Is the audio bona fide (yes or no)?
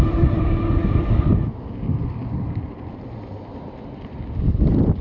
yes